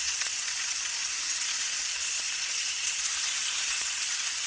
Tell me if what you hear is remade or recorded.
remade